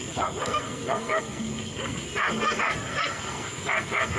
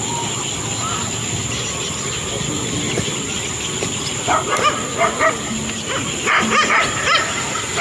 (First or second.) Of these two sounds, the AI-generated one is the first